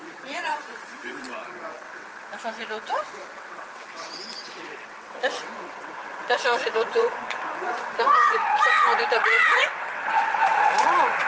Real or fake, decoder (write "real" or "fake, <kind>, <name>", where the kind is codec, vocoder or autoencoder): fake, vocoder, WaveNeXt